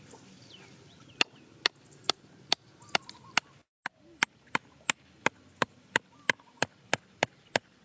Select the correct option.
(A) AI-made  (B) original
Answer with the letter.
B